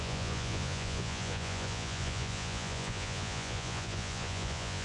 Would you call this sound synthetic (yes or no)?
yes